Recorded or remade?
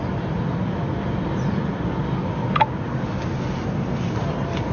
recorded